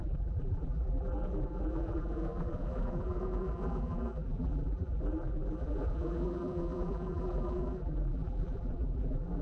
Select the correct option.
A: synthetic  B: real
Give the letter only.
A